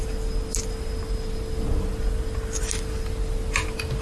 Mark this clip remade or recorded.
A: recorded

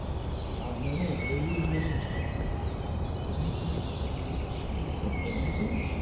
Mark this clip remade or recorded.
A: recorded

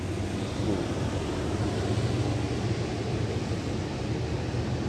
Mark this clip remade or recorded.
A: recorded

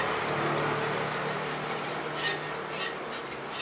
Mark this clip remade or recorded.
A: recorded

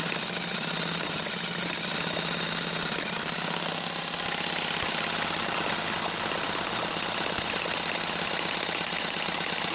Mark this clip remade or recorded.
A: recorded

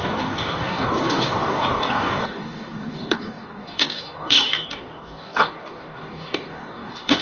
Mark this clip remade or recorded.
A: remade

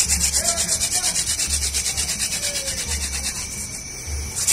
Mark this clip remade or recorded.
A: recorded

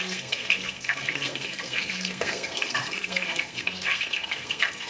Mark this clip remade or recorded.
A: remade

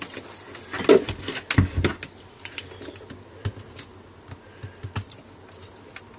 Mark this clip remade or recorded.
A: recorded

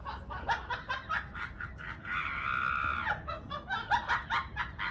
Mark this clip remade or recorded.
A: recorded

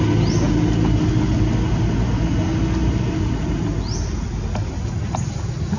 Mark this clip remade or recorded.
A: recorded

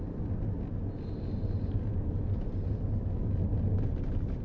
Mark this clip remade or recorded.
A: recorded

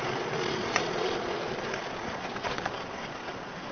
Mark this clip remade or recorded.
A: remade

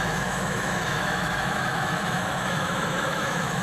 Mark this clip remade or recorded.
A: remade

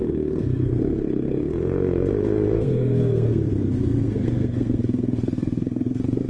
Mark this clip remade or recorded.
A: remade